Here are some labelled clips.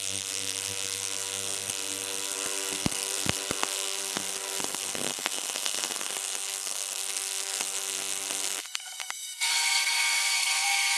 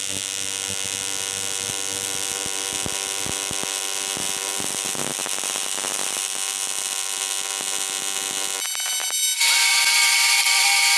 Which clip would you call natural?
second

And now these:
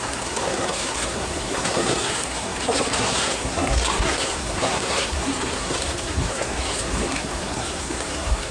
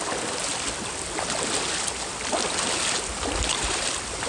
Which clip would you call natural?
second